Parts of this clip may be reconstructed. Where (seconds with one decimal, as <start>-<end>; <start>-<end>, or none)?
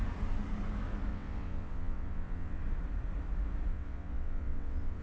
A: 1.1-2.6; 3.7-5.0